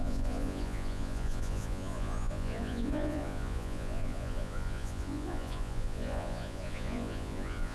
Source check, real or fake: fake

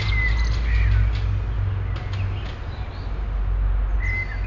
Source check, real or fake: real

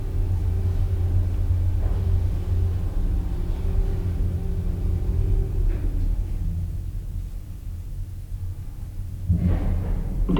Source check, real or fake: real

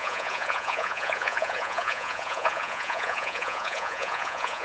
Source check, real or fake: fake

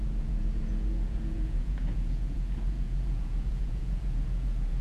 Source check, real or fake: fake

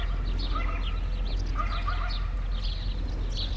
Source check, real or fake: real